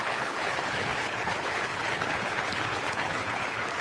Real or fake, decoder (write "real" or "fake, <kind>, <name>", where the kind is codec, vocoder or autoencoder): fake, codec, HILCodec